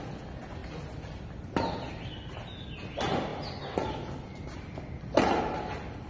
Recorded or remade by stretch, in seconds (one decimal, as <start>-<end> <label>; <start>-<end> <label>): 0.0-6.1 recorded